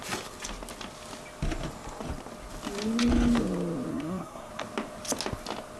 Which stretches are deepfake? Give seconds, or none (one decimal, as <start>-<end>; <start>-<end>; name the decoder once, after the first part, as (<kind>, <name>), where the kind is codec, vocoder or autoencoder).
3.9-4.5 (codec, SNAC)